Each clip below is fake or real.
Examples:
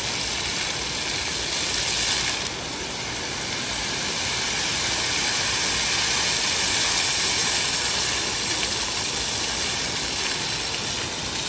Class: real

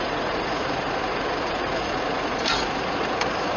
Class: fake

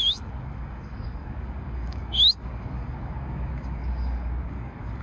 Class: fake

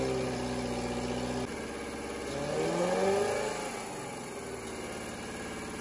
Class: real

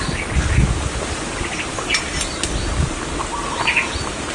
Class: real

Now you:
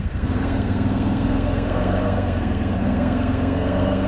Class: fake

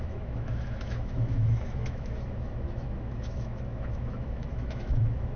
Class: fake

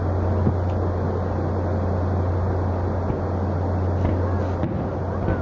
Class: real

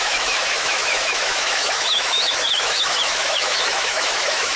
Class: fake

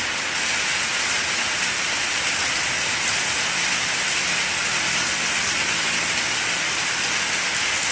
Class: real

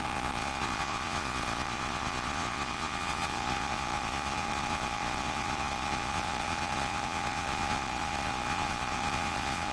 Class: fake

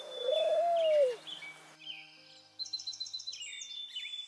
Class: real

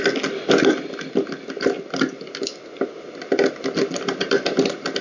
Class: real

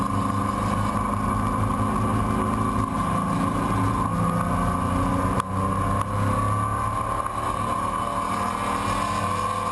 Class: real